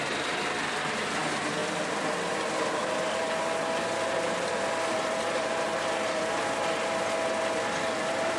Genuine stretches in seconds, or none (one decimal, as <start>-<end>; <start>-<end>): 0.0-8.4